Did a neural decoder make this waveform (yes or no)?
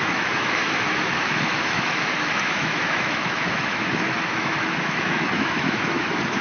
yes